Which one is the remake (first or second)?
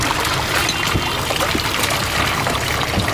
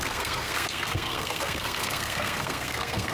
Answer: second